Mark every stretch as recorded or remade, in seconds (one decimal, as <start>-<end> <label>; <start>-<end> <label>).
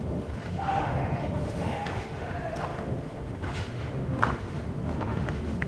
0.0-5.7 remade